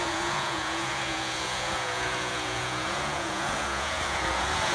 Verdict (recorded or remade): remade